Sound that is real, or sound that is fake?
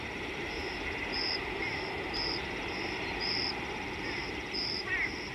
fake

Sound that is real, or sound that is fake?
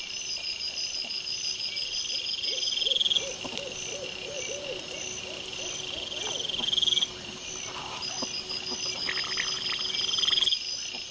real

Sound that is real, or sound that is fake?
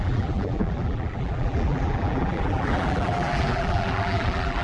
fake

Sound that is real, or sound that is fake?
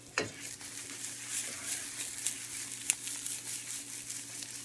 real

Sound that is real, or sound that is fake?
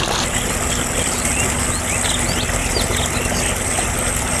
real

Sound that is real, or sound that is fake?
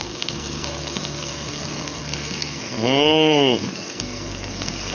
fake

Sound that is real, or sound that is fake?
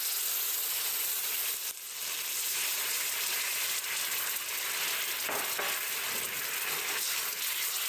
real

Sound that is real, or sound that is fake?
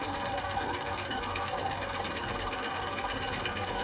fake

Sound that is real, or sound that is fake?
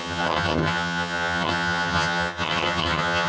fake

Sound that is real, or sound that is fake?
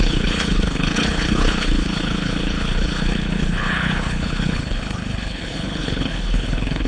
fake